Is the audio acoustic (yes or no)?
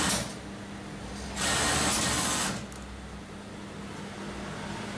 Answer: yes